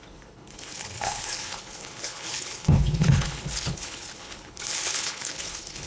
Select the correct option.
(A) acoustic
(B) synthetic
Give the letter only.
B